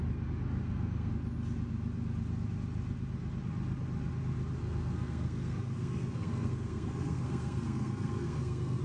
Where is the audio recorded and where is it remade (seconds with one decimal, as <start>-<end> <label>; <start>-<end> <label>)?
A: 0.0-0.6 recorded; 0.6-1.1 remade; 1.1-4.6 recorded; 4.6-8.8 remade